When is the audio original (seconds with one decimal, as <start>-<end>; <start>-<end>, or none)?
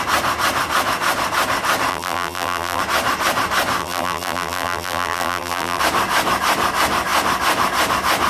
0.0-1.9; 2.8-3.8; 5.8-8.3